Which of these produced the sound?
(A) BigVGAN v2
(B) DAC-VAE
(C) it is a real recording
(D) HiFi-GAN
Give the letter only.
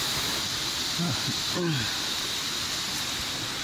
C